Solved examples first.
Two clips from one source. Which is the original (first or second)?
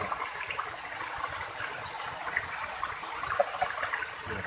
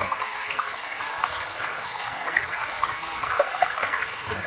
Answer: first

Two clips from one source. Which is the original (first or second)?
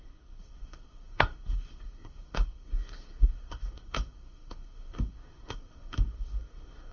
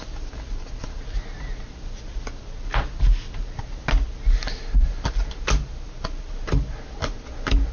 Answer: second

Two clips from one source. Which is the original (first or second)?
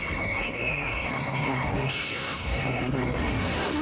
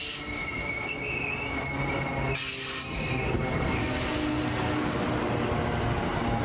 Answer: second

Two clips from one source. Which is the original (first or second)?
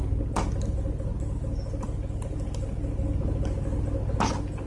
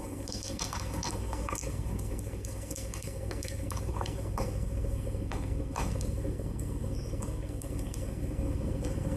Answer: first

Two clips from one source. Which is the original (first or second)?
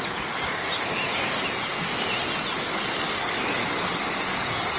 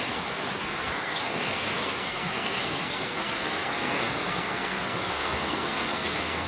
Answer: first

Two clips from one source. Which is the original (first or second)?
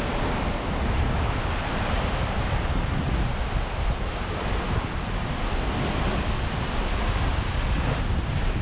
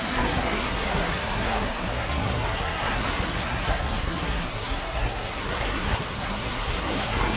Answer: first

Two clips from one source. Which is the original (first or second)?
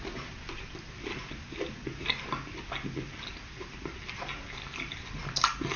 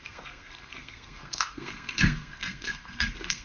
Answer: first